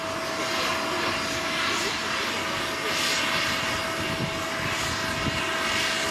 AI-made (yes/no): no